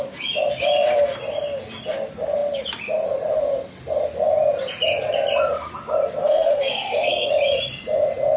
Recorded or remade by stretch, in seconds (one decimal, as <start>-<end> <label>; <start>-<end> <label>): 0.0-6.2 recorded; 6.2-7.3 remade; 7.3-8.4 recorded